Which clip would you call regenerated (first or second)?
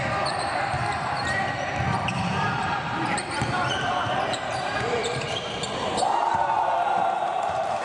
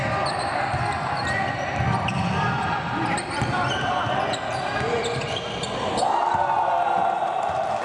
first